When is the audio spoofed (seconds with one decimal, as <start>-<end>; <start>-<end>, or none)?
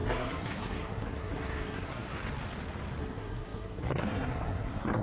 0.0-2.1; 3.0-5.0